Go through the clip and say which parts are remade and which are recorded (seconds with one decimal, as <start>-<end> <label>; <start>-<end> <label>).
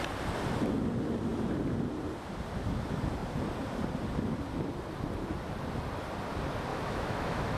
0.0-6.7 recorded; 6.7-7.6 remade